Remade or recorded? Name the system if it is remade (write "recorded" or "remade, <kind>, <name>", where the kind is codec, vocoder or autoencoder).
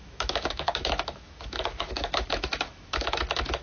remade, autoencoder, DAC-VAE